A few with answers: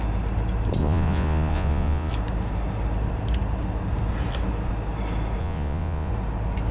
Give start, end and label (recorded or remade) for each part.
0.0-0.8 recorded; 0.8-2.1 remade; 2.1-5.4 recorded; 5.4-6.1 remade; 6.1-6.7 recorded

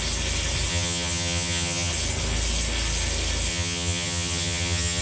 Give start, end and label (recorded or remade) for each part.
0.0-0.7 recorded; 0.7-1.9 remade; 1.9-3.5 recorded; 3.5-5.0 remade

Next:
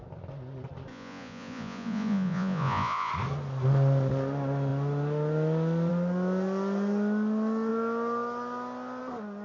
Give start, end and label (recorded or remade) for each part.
0.0-0.9 recorded; 0.9-3.1 remade; 3.1-9.4 recorded

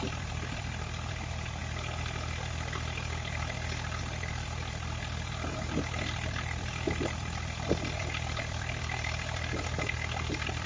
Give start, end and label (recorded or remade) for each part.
0.0-1.6 remade; 1.6-4.0 recorded; 4.0-10.7 remade